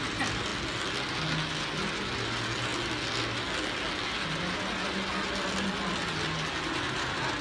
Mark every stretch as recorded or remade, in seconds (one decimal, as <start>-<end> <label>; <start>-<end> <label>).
0.0-7.4 recorded